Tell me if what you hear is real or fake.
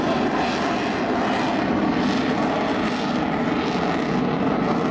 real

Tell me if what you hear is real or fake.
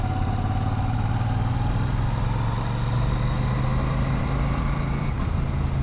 real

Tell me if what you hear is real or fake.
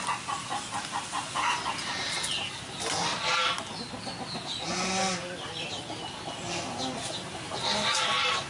real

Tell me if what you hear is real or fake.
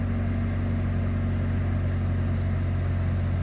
real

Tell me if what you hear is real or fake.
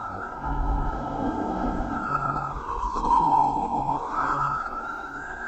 fake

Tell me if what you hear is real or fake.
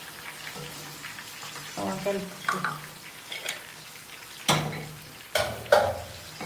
real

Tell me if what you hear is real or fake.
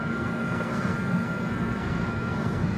fake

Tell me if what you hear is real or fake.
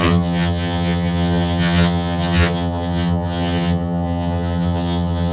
fake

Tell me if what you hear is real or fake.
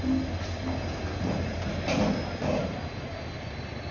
real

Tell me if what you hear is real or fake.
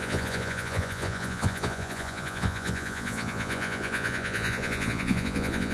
fake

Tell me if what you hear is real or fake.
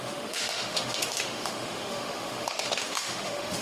fake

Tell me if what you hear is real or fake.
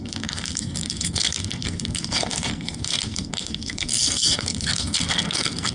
fake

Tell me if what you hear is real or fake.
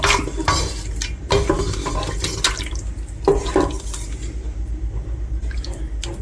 real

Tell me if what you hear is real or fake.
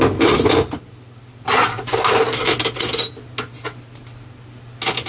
real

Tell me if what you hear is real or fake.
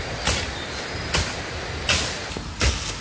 real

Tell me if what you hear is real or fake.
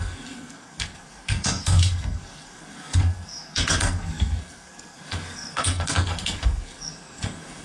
fake